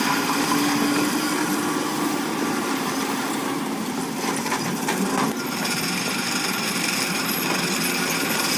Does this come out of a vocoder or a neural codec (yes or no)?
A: yes